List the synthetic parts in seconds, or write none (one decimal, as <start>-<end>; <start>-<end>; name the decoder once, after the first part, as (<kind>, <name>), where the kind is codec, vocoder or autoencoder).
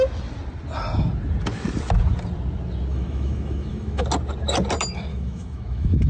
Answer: 2.9-4.0 (autoencoder, DAC-VAE); 5.1-6.1